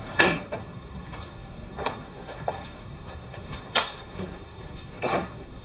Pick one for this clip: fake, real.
fake